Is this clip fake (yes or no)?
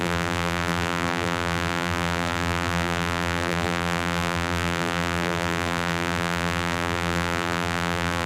yes